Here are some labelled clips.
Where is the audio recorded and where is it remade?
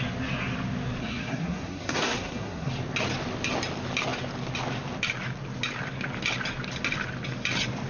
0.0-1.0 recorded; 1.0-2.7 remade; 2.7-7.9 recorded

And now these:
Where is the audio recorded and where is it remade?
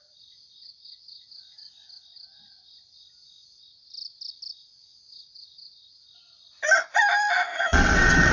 0.0-7.5 recorded; 7.5-8.3 remade